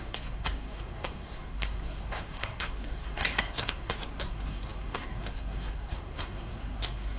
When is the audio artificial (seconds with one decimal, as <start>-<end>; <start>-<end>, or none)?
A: 0.0-7.2